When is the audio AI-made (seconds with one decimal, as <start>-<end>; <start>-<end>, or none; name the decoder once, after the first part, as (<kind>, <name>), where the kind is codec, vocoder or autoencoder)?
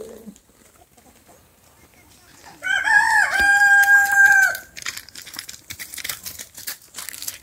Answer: 3.5-6.2 (vocoder, BigVGAN v2)